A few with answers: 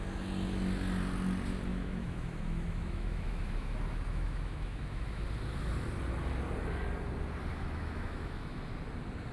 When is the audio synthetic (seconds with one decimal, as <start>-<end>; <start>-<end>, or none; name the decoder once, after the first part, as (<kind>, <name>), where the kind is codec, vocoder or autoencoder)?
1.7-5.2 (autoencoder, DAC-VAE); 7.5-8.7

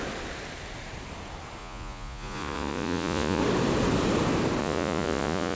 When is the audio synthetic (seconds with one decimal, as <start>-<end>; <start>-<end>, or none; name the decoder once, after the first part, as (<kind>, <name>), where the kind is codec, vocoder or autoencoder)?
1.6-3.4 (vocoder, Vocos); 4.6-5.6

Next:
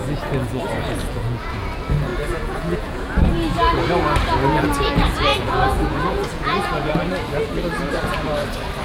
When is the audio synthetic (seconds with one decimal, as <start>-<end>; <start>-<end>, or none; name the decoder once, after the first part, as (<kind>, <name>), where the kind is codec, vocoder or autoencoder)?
0.0-1.5 (vocoder, Vocos); 2.1-3.0; 5.3-6.9